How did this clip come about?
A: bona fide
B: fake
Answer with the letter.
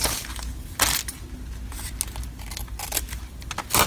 A